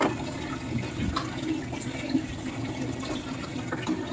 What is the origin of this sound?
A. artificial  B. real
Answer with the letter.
B